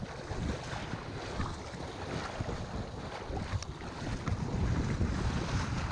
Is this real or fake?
real